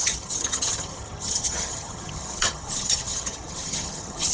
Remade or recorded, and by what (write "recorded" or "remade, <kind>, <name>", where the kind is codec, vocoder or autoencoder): remade, vocoder, HiFi-GAN